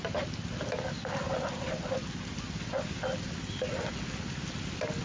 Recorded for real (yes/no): yes